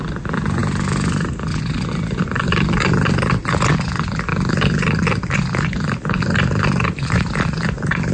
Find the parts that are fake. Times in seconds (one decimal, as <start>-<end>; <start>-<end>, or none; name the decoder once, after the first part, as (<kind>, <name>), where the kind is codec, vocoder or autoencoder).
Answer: none

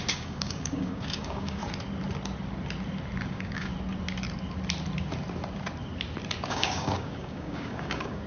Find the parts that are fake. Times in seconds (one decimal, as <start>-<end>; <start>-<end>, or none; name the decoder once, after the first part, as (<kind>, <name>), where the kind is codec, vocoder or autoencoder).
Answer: 0.0-1.6 (codec, DAC); 3.3-3.7; 6.4-8.3

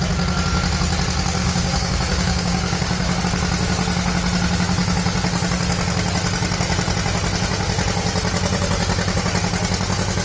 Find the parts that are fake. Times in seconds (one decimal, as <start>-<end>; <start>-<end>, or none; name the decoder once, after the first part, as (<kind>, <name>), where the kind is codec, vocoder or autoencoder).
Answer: 1.4-3.2 (codec, DAC)

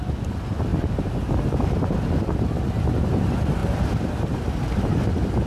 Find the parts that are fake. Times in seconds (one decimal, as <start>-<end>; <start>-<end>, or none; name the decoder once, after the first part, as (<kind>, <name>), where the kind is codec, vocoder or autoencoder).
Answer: none

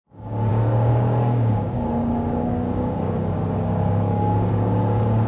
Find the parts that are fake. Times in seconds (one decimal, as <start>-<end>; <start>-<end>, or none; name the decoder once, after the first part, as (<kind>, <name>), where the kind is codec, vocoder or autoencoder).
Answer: 0.0-5.3 (codec, DAC)